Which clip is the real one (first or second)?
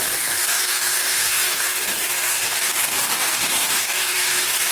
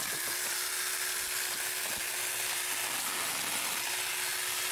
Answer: second